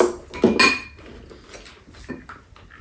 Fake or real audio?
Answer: real